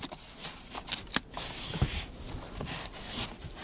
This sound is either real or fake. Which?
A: real